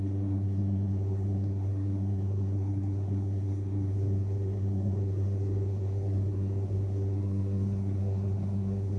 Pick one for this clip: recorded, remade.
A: remade